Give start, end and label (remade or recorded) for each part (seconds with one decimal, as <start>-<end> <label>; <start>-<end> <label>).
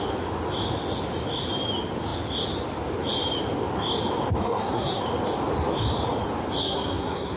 0.0-4.4 recorded; 4.4-5.0 remade; 5.0-6.6 recorded; 6.6-7.4 remade